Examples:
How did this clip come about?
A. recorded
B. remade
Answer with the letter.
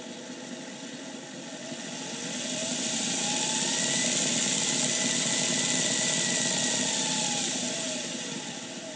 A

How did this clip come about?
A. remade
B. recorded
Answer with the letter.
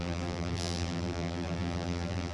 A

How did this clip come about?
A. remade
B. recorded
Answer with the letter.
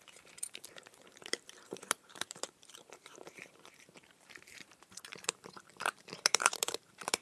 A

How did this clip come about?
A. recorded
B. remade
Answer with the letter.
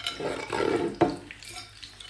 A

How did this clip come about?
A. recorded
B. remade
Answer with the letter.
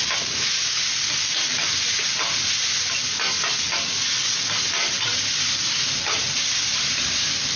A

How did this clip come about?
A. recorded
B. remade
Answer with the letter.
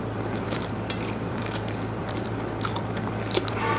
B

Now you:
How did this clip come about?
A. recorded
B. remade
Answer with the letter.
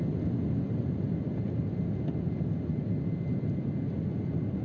A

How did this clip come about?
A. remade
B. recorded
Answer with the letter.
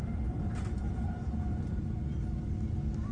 A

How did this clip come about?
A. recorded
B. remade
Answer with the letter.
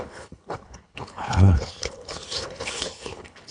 B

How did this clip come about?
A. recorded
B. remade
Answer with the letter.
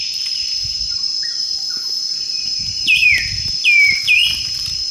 B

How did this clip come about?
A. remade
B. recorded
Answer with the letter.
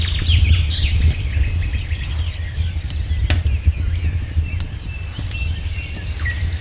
B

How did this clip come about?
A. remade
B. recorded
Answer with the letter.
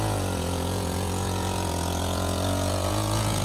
A